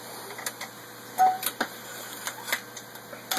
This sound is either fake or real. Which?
real